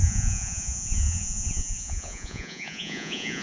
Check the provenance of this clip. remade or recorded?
remade